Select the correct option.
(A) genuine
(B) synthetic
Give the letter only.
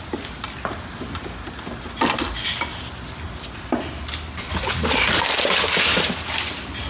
A